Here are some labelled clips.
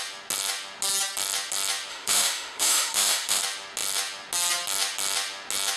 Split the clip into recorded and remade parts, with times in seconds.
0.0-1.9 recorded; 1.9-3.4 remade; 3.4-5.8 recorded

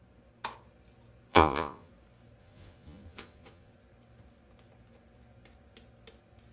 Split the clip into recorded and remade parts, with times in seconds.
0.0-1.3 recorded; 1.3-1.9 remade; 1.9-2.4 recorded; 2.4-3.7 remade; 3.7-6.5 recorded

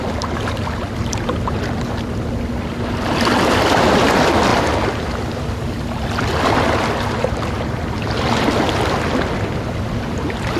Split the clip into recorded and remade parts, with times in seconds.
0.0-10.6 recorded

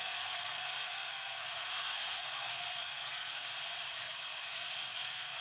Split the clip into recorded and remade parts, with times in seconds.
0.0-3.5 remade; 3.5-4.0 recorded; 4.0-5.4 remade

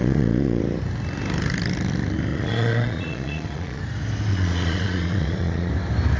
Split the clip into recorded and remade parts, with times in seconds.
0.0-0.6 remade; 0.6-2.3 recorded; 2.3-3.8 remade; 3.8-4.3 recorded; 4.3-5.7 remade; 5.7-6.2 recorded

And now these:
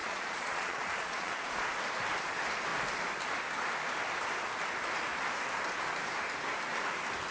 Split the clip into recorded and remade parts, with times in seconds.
0.0-1.7 remade; 1.7-7.3 recorded